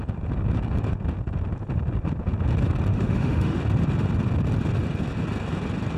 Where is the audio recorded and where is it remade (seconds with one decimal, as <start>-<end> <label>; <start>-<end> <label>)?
0.0-2.9 recorded; 2.9-3.6 remade; 3.6-6.0 recorded

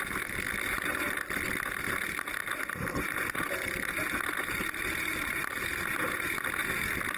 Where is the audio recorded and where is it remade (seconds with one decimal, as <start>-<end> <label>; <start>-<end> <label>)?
0.0-7.2 recorded

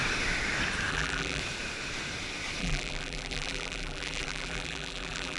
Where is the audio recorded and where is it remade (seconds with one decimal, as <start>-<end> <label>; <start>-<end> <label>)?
0.0-0.9 recorded; 0.9-1.4 remade; 1.4-2.6 recorded; 2.6-5.4 remade

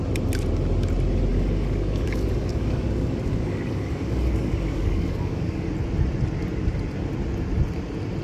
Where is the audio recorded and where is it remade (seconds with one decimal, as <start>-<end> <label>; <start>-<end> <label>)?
0.0-1.3 recorded; 1.3-5.7 remade; 5.7-8.2 recorded

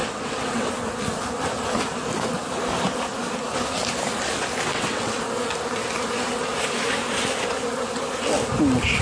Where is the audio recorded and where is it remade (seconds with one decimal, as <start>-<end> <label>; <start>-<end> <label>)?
0.0-0.7 remade; 0.7-4.7 recorded; 4.7-5.2 remade; 5.2-9.0 recorded

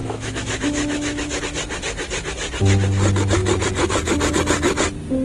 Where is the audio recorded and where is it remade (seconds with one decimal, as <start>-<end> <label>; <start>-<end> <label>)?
0.0-1.4 remade; 1.4-5.2 recorded

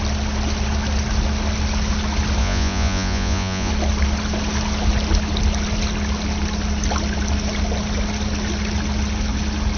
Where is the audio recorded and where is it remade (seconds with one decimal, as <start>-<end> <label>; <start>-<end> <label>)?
0.0-2.4 recorded; 2.4-3.7 remade; 3.7-9.8 recorded

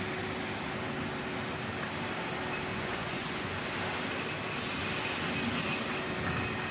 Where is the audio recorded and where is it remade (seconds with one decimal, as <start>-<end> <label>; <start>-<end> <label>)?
0.0-2.7 recorded; 2.7-3.6 remade; 3.6-6.7 recorded